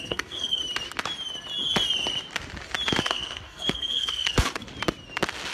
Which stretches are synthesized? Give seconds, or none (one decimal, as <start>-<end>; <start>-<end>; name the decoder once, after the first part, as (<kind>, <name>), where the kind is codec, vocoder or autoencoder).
0.0-0.6 (codec, SNAC); 3.0-4.7